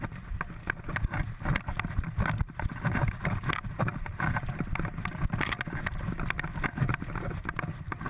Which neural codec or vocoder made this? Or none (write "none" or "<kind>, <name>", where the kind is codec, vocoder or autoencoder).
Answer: none